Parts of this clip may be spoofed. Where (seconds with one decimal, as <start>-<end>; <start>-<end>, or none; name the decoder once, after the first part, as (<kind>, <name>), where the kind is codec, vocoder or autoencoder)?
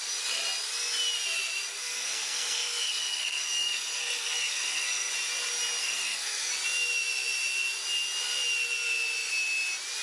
1.7-5.1 (codec, SNAC); 5.8-6.5